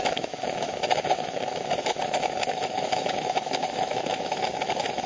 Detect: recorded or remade remade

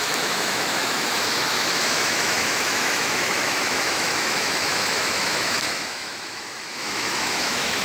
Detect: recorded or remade remade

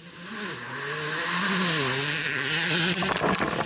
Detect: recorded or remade recorded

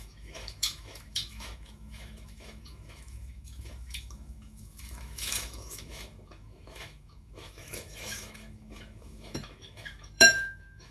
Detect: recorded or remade remade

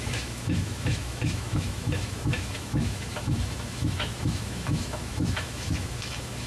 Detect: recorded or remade remade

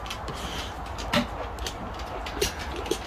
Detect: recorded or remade recorded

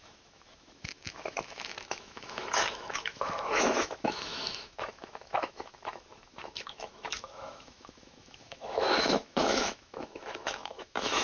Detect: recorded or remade remade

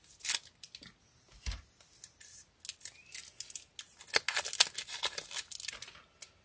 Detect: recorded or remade recorded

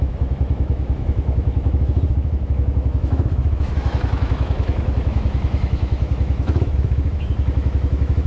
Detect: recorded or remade remade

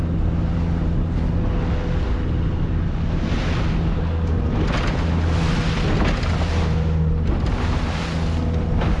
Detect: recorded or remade recorded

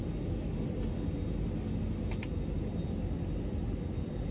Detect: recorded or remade recorded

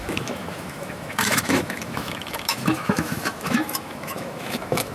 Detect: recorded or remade remade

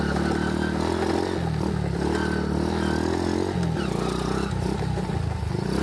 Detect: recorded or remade recorded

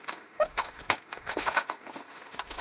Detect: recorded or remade remade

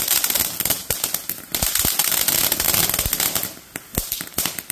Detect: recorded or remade recorded